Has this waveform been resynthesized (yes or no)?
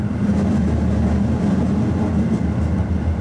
no